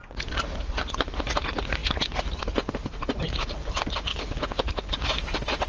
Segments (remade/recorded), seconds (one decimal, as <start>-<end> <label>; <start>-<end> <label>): 0.0-4.1 recorded; 4.1-4.9 remade; 4.9-5.7 recorded